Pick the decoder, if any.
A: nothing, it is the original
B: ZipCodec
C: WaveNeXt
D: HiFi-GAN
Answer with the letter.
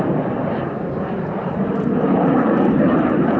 A